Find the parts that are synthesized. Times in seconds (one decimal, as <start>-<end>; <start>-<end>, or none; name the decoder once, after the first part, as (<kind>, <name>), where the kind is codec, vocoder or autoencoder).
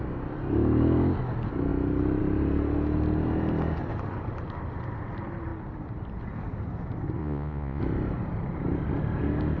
7.2-7.8 (vocoder, Vocos)